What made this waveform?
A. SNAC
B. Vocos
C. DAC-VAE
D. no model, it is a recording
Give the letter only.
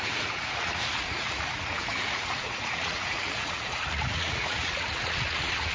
B